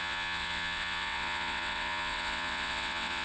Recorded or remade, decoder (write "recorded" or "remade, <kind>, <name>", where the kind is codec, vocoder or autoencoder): remade, vocoder, WaveNeXt